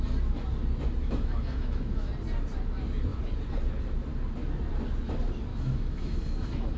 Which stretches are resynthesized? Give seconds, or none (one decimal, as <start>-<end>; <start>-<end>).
1.0-2.1; 5.5-6.8